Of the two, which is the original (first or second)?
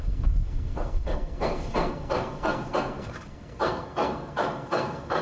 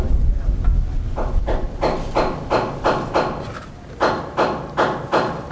second